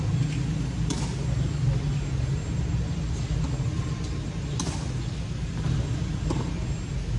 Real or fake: real